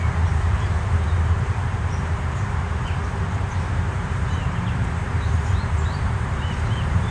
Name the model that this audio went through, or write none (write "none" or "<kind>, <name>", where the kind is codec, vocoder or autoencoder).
vocoder, BigVGAN v2